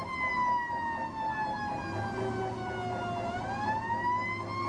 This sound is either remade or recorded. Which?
recorded